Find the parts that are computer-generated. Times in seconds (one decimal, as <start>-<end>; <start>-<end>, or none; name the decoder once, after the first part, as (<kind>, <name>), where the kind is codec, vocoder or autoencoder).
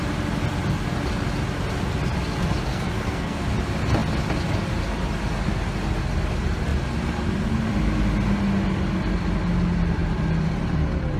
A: 2.7-3.4 (codec, SNAC)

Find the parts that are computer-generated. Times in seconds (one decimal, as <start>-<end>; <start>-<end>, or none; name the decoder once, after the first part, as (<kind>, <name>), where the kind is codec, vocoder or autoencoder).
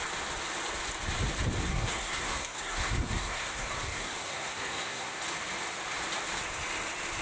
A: 1.7-5.2 (codec, SNAC)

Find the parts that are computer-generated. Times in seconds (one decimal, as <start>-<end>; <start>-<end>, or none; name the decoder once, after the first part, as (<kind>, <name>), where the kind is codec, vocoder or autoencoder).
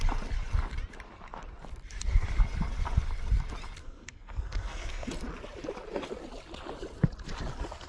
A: 3.8-5.1 (codec, SNAC)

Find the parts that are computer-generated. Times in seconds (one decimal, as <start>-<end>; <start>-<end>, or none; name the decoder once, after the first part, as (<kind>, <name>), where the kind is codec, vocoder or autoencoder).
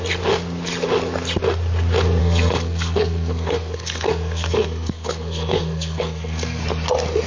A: 2.2-6.6 (codec, SNAC)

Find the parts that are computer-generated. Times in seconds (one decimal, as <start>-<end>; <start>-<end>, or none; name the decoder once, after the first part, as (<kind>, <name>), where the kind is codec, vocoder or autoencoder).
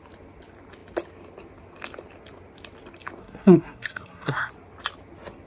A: 3.2-4.5 (codec, SNAC)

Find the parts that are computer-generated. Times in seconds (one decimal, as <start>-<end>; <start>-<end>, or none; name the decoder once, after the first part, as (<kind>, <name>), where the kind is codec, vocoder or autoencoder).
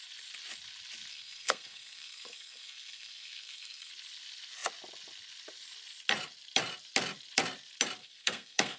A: 1.1-3.9 (codec, SNAC); 8.0-8.8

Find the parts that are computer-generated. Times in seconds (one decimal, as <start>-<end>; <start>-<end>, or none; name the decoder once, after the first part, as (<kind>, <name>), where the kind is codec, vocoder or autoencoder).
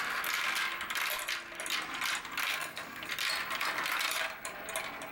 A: 2.5-3.1 (codec, SNAC)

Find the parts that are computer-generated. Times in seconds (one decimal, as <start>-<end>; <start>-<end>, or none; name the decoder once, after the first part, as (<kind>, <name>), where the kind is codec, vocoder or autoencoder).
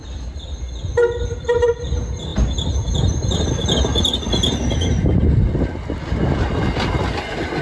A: none